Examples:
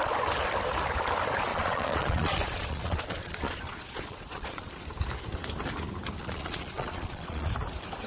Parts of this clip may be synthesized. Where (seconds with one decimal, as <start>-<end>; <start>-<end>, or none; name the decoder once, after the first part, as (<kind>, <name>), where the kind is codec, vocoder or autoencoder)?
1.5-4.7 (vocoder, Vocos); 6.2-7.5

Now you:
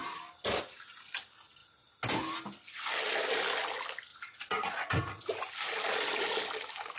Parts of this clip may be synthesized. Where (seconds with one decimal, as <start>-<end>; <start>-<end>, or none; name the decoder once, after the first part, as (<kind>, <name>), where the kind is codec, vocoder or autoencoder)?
4.1-5.2 (vocoder, Vocos)

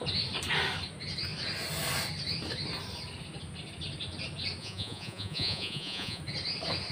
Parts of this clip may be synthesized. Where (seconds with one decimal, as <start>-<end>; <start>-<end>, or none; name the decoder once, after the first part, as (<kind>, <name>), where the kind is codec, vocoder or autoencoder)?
4.6-6.2 (vocoder, Vocos)